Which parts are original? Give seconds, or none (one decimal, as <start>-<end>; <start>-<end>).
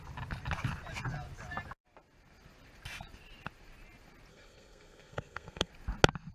0.0-4.3; 5.7-6.3